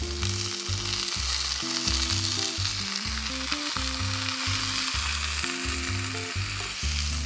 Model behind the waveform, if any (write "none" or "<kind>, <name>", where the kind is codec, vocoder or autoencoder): none